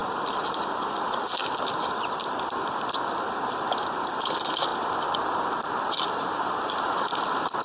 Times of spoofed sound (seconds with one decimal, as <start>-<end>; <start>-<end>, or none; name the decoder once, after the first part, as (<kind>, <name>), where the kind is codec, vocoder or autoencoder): none